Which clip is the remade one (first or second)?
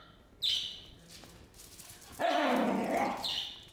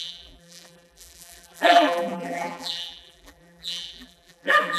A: second